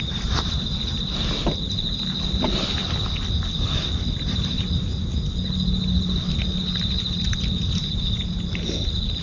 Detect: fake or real real